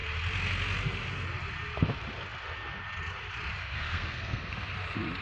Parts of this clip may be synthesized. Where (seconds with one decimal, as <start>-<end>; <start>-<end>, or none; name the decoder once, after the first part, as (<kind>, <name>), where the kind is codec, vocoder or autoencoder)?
3.6-4.7 (codec, SNAC)